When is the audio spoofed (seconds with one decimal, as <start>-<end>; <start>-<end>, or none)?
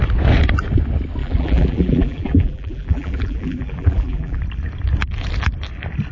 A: 1.2-4.4